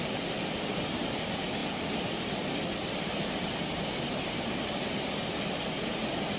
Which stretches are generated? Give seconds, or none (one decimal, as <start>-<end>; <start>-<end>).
none